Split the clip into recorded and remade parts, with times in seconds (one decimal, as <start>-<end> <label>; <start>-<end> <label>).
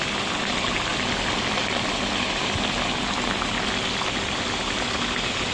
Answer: 0.0-5.5 recorded